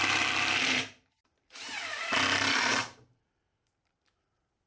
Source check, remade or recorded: remade